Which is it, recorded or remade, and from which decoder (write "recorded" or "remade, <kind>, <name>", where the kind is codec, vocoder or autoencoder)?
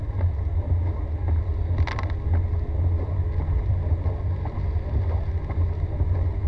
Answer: recorded